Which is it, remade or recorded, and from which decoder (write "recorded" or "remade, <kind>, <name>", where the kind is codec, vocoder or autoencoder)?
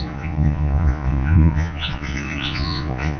remade, vocoder, Vocos